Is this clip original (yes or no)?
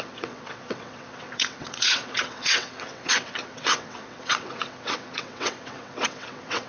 no